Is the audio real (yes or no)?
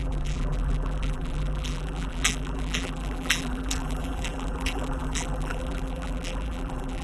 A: no